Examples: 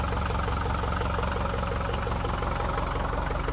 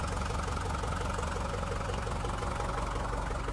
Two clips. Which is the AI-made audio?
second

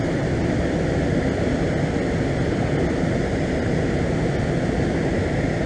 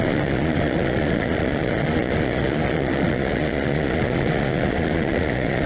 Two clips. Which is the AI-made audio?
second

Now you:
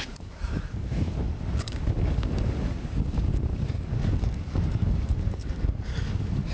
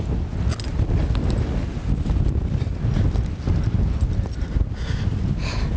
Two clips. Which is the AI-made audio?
first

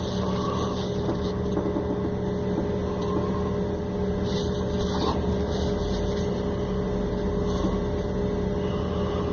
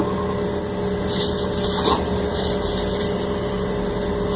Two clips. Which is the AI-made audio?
first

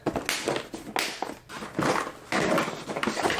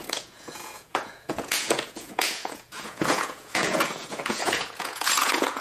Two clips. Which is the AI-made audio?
second